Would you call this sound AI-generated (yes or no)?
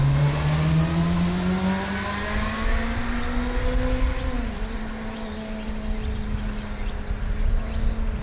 no